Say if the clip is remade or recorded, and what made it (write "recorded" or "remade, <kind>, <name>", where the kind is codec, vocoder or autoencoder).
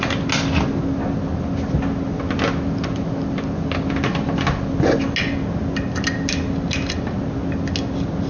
recorded